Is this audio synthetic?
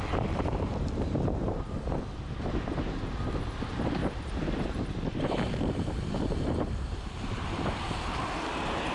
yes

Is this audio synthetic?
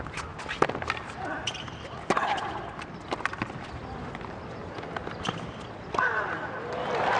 no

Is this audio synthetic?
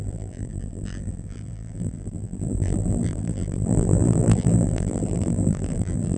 yes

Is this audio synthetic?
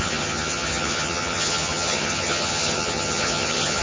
yes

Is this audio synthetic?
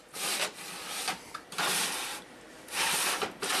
no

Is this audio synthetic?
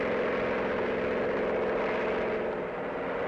no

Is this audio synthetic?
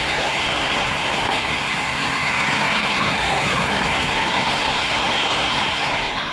yes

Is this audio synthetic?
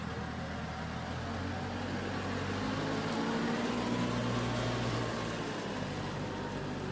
no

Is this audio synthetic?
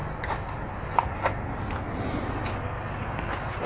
no